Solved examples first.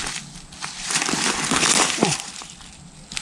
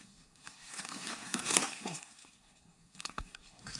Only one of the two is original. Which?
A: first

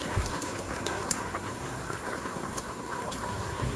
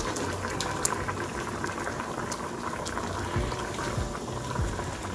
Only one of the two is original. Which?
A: second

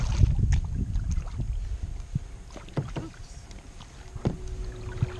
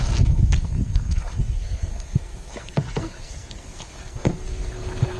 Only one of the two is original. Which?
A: first